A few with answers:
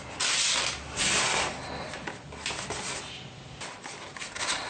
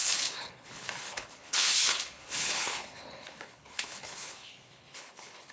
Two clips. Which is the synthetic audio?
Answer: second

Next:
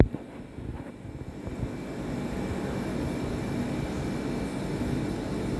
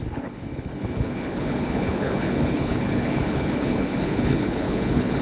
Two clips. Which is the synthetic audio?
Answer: second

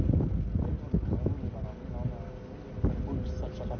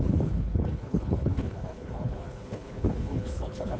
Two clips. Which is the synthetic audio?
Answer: second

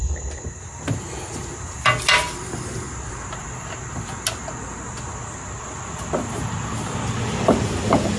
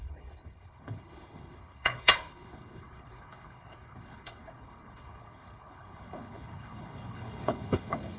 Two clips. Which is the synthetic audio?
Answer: second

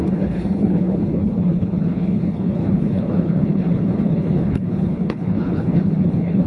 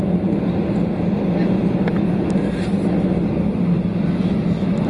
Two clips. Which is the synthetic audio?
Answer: first